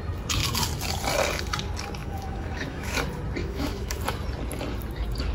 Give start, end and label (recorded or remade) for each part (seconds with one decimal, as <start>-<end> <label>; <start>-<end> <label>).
0.0-2.0 recorded; 2.0-3.0 remade; 3.0-3.4 recorded; 3.4-4.0 remade; 4.0-5.3 recorded